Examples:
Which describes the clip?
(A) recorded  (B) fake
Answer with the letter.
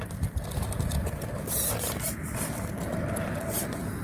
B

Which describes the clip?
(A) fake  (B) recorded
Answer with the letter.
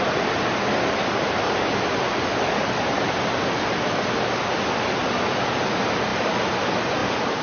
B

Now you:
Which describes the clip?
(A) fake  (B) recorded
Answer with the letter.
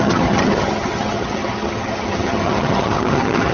A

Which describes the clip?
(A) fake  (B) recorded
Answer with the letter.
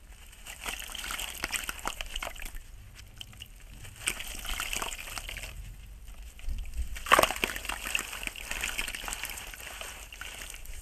B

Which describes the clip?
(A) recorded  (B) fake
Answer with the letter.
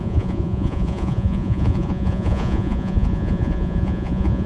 B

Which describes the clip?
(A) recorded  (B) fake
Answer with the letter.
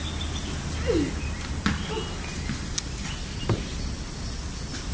A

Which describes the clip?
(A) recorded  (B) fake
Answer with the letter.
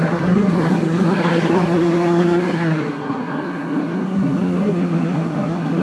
B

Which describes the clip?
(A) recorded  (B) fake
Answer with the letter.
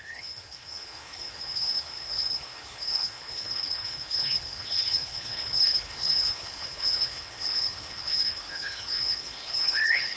B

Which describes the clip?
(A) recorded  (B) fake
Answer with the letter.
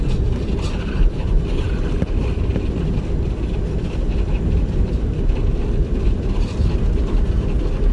A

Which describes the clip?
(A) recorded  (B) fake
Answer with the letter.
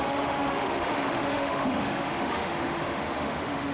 B